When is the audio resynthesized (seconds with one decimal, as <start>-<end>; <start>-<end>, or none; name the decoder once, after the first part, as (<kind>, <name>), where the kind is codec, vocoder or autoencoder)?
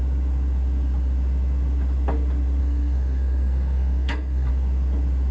2.6-4.5 (codec, SNAC)